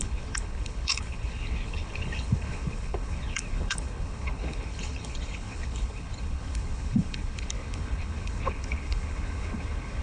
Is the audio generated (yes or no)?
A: yes